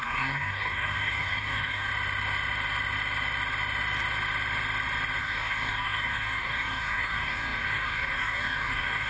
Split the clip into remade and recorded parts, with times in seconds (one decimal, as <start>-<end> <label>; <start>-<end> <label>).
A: 0.0-1.9 remade; 1.9-5.2 recorded; 5.2-9.1 remade